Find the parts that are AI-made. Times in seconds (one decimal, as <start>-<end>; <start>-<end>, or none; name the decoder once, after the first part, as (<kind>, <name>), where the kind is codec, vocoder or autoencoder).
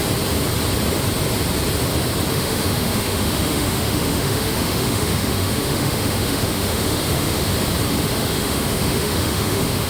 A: 2.3-7.5 (autoencoder, DAC-VAE); 8.0-9.9